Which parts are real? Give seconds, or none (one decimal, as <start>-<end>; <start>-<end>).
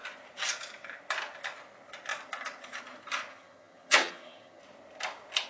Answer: 0.0-3.3; 4.6-5.5